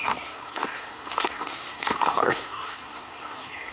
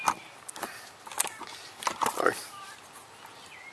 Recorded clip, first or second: second